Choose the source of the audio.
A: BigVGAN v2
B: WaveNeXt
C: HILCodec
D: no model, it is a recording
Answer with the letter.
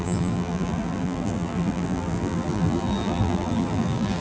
A